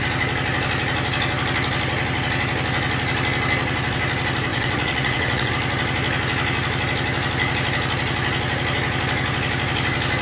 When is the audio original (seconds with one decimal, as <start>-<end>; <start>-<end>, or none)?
0.0-4.5; 5.5-10.2